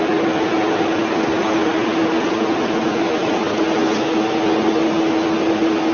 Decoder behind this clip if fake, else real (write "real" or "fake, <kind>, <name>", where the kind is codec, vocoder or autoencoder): real